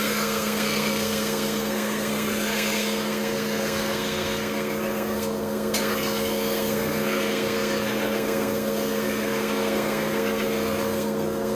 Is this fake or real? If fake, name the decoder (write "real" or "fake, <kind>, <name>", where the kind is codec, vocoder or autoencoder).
fake, codec, SNAC